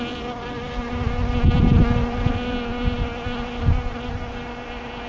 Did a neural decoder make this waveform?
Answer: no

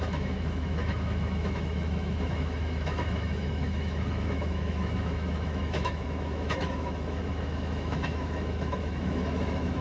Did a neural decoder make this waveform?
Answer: yes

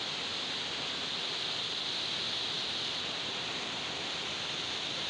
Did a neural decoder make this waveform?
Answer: no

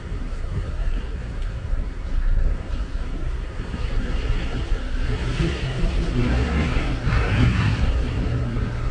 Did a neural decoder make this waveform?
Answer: yes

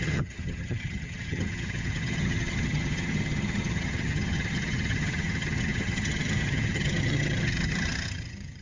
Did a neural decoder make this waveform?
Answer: yes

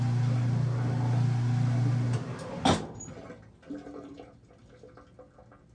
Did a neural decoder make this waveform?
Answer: no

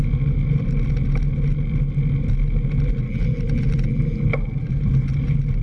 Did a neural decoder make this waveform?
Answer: no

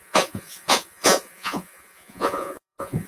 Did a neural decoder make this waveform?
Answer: yes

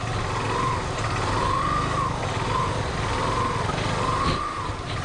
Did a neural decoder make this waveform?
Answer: no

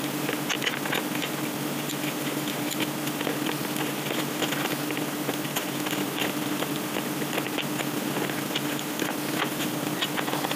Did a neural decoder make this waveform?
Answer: no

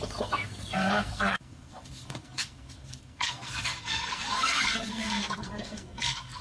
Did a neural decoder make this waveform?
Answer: yes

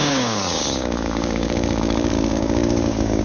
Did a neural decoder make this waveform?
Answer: yes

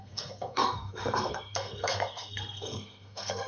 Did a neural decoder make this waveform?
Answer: yes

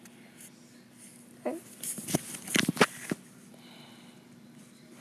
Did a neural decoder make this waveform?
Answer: no